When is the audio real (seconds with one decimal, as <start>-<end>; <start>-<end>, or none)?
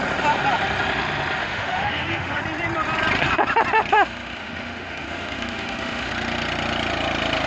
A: 0.0-1.4; 2.4-3.9; 6.1-7.5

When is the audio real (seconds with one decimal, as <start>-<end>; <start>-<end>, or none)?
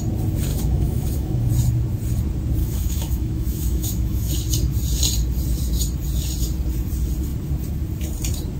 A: 0.0-0.5; 1.5-2.6; 4.3-8.6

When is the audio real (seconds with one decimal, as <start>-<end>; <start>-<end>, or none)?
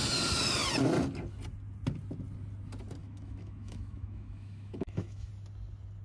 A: 0.0-3.0; 5.3-6.0